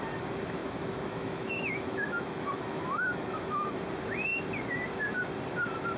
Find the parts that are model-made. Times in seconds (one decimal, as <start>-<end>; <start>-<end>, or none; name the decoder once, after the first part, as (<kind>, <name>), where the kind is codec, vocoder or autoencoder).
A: 0.6-3.8 (autoencoder, DAC-VAE)